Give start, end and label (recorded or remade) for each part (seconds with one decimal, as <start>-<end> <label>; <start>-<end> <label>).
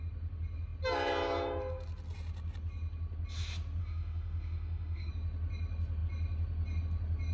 0.0-3.8 recorded; 3.8-5.1 remade; 5.1-7.3 recorded